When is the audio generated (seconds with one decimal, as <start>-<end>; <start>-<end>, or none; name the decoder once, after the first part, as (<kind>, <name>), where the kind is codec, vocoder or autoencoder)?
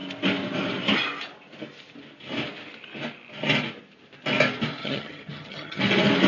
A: 4.8-5.8 (vocoder, HiFi-GAN)